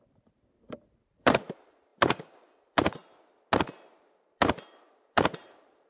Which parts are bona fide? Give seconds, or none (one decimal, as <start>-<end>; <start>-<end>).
3.0-3.9